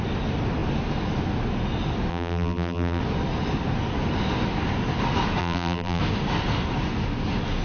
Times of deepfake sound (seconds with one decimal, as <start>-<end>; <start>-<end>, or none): 2.1-3.0; 5.4-6.0